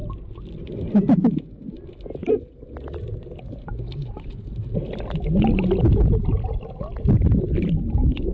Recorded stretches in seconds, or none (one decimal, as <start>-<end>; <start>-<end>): 0.0-8.3